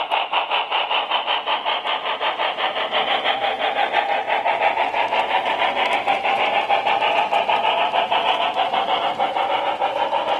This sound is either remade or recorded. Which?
recorded